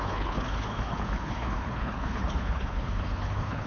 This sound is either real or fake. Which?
fake